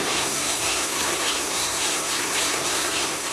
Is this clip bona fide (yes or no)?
no